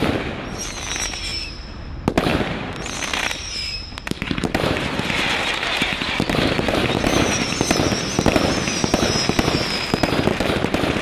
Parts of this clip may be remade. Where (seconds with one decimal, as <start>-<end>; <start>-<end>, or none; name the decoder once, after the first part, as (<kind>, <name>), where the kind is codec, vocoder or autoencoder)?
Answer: 1.3-1.9 (vocoder, BigVGAN v2); 2.3-7.4; 10.3-11.0